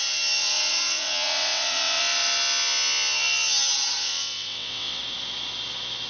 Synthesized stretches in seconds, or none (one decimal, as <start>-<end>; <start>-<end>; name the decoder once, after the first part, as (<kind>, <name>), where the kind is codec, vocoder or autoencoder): 0.4-2.0 (vocoder, WaveNeXt); 4.0-5.0

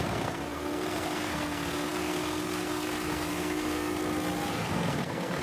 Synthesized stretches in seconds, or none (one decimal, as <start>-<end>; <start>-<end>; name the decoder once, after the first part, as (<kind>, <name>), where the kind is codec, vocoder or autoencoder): 0.0-4.0 (codec, SNAC); 4.5-5.4

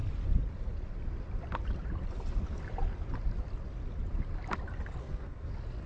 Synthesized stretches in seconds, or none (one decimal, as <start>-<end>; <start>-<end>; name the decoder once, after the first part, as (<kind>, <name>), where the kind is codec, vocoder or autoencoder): 5.0-5.5 (codec, SNAC)

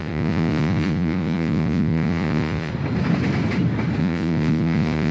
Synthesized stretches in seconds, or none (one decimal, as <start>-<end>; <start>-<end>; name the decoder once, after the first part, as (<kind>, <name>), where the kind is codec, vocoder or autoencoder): 0.0-2.7 (vocoder, Vocos); 4.0-5.1